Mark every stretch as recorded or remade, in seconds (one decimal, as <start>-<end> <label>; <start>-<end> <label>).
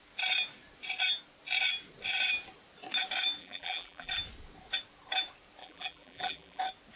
0.0-3.4 recorded; 3.4-4.1 remade; 4.1-5.6 recorded; 5.6-6.6 remade; 6.6-7.0 recorded